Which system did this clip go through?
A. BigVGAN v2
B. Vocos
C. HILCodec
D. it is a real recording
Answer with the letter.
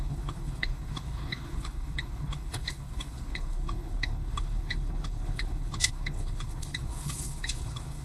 C